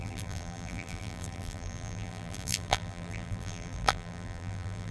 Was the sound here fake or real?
fake